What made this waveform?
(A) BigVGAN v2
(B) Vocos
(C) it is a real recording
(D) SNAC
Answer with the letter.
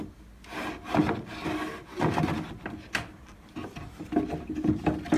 C